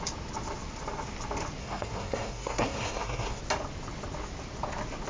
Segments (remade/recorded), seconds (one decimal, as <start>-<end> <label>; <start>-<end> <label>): 0.0-1.6 recorded; 1.6-3.4 remade; 3.4-5.1 recorded